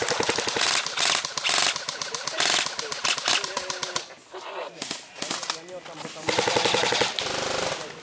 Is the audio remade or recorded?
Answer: recorded